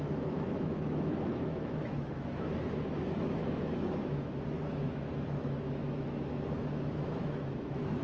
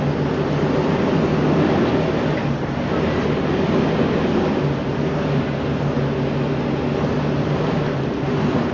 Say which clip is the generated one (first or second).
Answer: first